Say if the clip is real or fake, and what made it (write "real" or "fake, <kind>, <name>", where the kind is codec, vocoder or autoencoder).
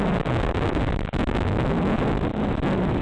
real